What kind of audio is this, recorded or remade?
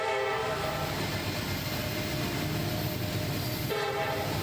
recorded